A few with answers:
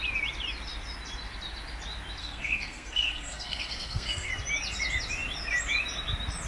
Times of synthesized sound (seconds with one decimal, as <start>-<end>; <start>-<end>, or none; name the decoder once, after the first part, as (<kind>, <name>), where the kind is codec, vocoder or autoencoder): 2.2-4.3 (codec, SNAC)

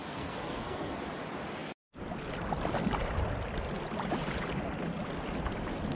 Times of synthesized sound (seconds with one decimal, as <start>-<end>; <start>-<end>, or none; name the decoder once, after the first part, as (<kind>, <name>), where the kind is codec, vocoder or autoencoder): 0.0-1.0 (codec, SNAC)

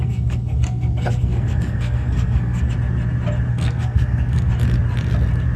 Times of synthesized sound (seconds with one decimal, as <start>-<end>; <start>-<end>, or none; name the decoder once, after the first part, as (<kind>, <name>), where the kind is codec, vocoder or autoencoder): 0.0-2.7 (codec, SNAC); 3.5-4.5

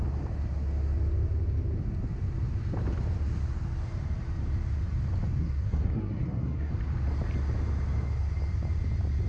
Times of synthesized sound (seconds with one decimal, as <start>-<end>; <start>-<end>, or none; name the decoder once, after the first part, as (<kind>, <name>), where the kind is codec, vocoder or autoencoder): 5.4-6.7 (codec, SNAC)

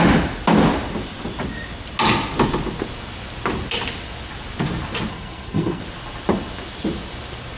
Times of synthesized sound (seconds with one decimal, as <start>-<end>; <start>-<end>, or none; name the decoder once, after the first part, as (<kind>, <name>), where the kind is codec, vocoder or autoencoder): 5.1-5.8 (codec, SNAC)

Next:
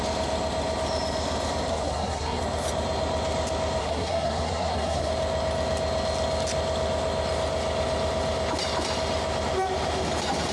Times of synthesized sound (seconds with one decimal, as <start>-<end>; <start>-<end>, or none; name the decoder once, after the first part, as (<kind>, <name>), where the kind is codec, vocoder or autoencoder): 1.7-2.4 (codec, SNAC); 3.8-5.1

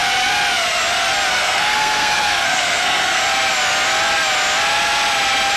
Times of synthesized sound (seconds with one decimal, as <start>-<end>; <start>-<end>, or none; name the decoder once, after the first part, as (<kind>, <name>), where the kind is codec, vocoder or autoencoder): 1.3-3.2 (codec, SNAC)

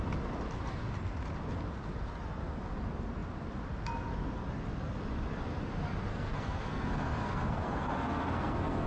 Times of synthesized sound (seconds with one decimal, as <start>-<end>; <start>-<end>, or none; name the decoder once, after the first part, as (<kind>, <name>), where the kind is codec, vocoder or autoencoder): 6.1-8.9 (codec, SNAC)